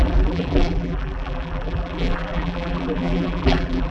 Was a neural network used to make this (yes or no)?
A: yes